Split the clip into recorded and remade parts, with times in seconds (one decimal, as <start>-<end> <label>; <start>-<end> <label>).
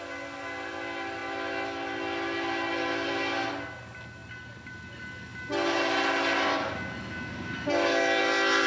0.0-8.7 recorded